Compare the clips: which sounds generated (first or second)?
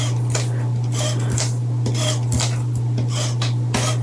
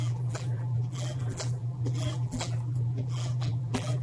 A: second